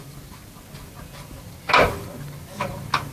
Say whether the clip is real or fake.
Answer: real